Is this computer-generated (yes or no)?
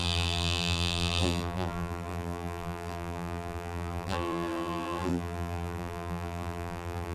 yes